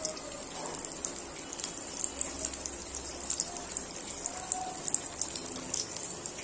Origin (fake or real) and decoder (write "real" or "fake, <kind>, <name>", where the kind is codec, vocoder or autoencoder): real